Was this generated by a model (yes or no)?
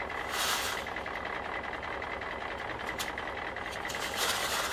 no